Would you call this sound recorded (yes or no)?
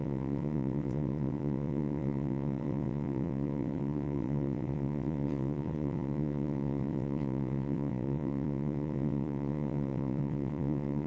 no